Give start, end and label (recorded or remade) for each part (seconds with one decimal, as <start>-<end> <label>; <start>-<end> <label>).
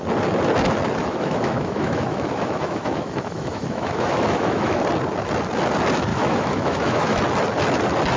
0.0-1.0 recorded; 1.0-4.8 remade; 4.8-6.1 recorded; 6.1-7.2 remade; 7.2-8.2 recorded